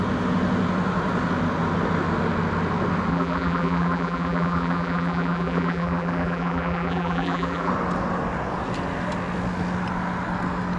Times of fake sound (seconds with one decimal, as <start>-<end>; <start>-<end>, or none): 3.1-7.7